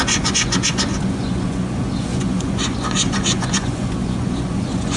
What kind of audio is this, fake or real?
fake